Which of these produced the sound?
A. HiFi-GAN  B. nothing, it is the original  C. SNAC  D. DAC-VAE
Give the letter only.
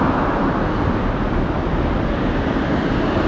B